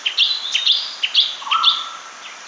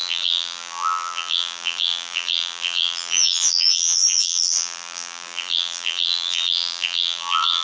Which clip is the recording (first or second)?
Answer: first